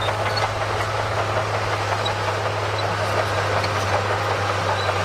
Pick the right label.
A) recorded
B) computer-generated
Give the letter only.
A